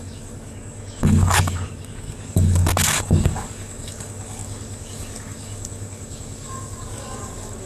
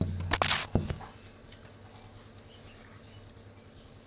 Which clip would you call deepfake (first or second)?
first